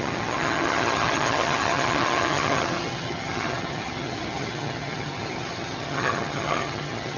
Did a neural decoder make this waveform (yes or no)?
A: yes